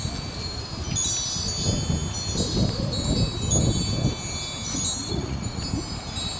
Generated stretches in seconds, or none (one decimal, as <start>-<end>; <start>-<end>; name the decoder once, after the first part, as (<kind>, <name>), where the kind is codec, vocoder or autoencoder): 5.0-5.6 (vocoder, Vocos)